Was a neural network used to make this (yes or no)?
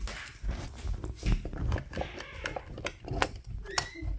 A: no